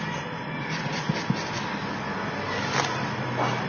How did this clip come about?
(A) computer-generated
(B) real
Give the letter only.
B